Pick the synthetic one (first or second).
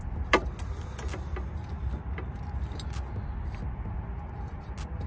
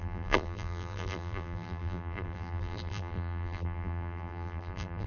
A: second